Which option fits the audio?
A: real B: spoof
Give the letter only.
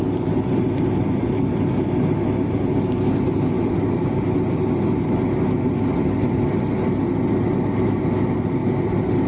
A